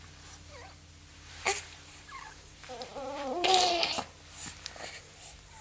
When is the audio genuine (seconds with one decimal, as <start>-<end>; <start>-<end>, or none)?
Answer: 0.0-1.1; 3.7-5.6